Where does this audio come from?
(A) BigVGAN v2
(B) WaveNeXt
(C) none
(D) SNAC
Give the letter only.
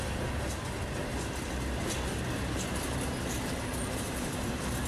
C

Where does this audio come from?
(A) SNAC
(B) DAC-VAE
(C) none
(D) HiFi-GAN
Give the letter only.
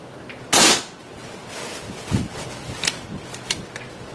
C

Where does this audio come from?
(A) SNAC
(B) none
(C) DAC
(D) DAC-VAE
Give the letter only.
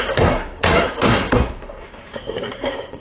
A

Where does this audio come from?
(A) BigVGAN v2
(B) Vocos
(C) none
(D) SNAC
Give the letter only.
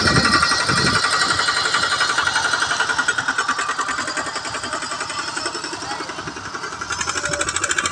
C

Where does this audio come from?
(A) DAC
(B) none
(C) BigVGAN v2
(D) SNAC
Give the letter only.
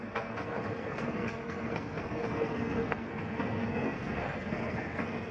D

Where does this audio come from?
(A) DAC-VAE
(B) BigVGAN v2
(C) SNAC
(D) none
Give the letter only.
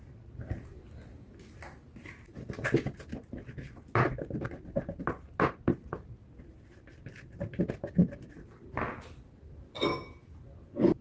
D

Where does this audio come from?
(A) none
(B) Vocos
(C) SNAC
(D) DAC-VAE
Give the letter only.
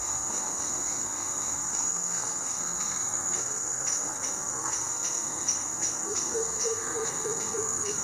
C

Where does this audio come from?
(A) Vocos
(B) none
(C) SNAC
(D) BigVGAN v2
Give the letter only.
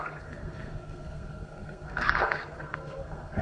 C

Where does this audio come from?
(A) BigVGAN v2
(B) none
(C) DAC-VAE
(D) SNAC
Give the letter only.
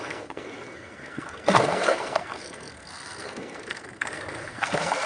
D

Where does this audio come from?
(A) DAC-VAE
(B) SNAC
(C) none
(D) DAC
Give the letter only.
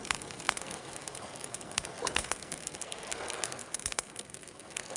B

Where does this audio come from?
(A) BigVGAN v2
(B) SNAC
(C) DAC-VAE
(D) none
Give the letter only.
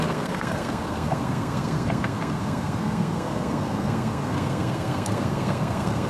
B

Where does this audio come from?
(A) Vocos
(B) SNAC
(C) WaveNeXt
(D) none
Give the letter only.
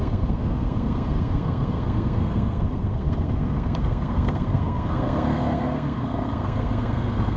B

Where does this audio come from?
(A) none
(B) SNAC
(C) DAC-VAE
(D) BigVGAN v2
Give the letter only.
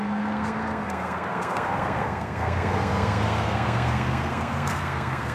B